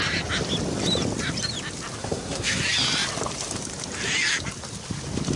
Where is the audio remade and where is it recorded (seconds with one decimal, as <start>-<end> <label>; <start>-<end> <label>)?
0.0-2.0 recorded; 2.0-2.6 remade; 2.6-5.4 recorded